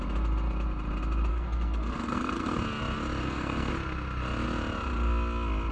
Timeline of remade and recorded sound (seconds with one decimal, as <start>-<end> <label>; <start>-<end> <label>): 0.0-1.3 recorded; 1.3-2.6 remade; 2.6-3.2 recorded; 3.2-3.7 remade; 3.7-5.7 recorded